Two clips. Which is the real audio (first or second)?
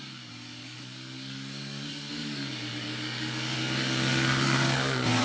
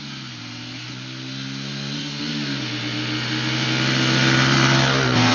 second